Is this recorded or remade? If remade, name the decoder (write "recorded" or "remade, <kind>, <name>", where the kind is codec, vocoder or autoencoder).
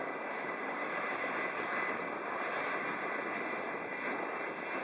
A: recorded